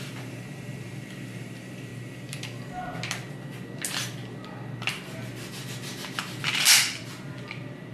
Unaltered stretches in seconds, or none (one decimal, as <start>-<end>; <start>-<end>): 1.9-6.4